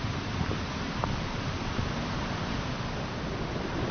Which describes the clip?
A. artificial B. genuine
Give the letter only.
B